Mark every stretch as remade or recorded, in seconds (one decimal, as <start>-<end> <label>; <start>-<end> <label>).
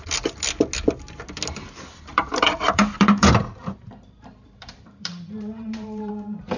0.0-2.1 recorded; 2.1-6.1 remade; 6.1-6.6 recorded